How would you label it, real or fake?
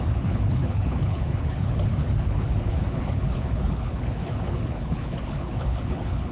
fake